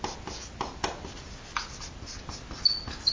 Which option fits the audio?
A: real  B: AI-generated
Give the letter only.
A